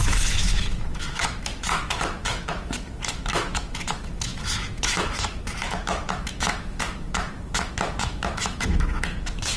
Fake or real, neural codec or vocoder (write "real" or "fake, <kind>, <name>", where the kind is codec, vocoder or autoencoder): fake, autoencoder, DAC-VAE